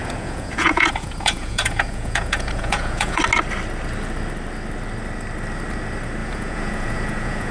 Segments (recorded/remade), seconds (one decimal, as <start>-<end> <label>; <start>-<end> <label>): 0.0-3.2 remade; 3.2-6.2 recorded; 6.2-7.5 remade